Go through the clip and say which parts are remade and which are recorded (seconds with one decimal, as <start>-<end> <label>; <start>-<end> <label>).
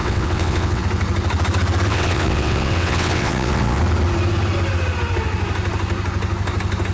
0.0-0.8 remade; 0.8-1.9 recorded; 1.9-3.8 remade; 3.8-6.9 recorded